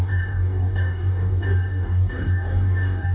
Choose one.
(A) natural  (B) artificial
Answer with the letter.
B